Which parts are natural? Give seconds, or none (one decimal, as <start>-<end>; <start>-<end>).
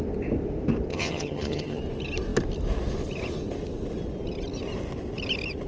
0.0-0.9; 1.8-5.7